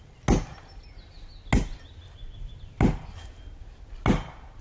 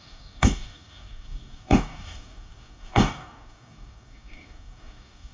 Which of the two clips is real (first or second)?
first